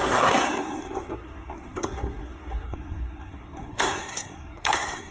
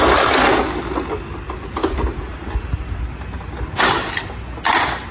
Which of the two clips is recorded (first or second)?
second